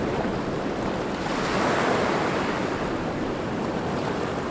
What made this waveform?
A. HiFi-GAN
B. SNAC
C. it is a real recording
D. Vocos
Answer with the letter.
C